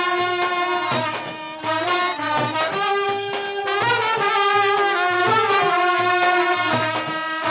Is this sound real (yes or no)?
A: yes